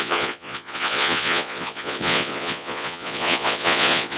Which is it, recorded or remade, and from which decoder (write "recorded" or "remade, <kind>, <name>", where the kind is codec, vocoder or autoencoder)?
remade, vocoder, Vocos